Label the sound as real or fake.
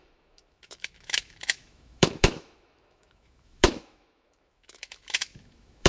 fake